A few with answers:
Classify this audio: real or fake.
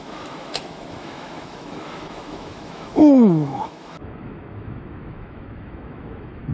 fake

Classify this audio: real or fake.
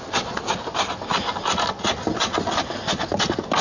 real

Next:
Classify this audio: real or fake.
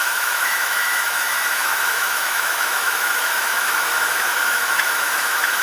fake